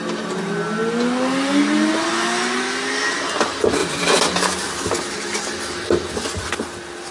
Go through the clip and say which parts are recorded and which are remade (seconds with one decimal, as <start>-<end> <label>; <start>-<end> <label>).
0.0-7.1 recorded